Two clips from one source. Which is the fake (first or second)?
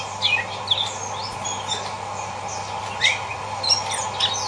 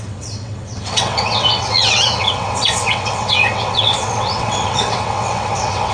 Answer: second